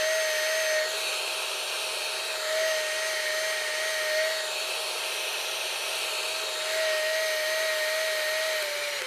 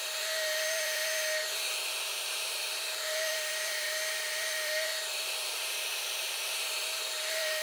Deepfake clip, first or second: second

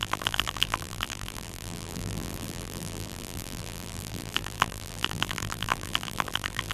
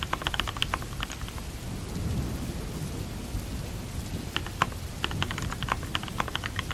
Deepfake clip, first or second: first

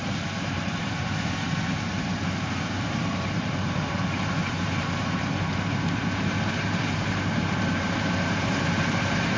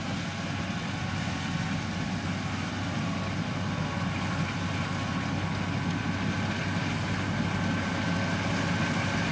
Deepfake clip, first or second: first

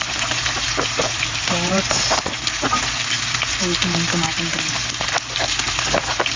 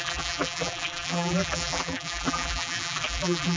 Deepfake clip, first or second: second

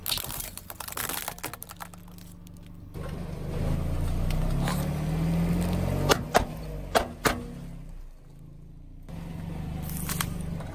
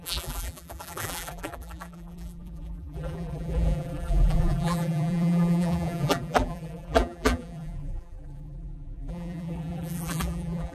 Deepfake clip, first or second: second